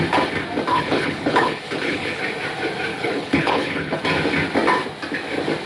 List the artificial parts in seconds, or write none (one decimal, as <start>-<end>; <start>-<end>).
0.7-2.2; 2.9-4.0